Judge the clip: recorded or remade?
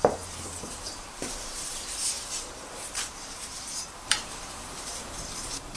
remade